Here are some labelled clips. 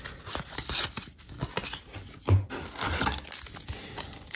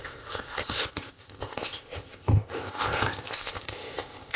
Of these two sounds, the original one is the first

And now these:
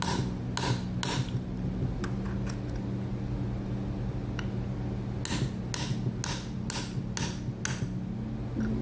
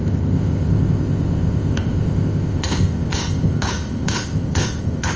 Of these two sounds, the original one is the first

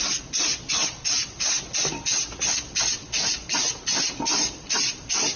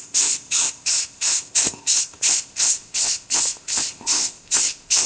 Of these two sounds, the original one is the first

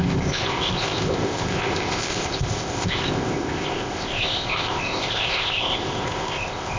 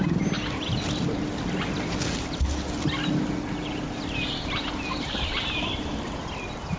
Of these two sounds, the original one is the second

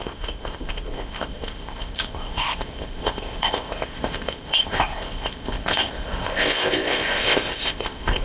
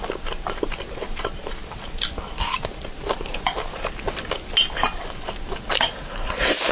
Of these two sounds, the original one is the second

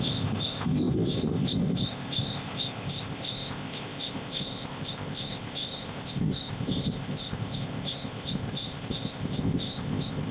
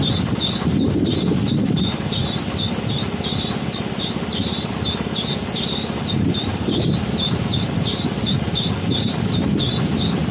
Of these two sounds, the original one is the second